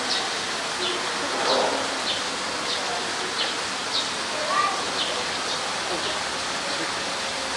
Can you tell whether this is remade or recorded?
recorded